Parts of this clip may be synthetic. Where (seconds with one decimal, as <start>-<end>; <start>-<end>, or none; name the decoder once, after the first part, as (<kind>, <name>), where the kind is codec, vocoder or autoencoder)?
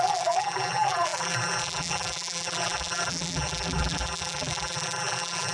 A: 0.0-5.5 (vocoder, BigVGAN v2)